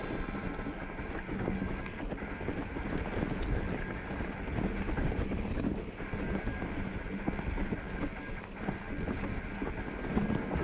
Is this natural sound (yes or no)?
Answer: yes